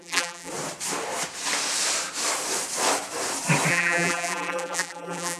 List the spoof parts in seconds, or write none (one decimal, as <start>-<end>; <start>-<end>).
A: 0.0-0.5; 3.7-5.4